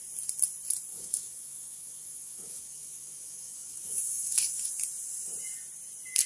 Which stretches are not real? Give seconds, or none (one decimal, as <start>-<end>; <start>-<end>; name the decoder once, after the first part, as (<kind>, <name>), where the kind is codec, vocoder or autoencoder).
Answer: 0.9-4.7 (autoencoder, DAC-VAE)